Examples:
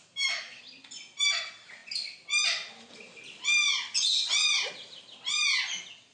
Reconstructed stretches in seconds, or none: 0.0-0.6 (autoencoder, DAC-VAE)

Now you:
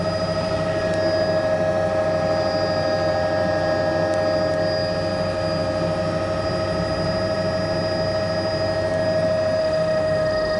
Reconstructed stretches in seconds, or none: 9.6-10.6 (autoencoder, DAC-VAE)